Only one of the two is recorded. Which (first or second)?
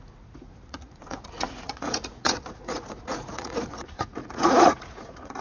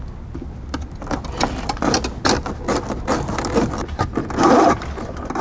second